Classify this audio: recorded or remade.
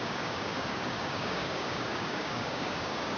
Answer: remade